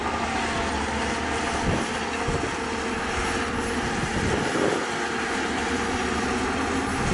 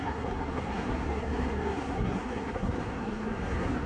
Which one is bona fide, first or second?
first